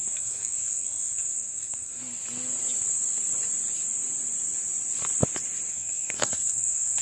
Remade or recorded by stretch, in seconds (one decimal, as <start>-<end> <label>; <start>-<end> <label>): 0.0-2.0 remade; 2.0-5.7 recorded; 5.7-7.0 remade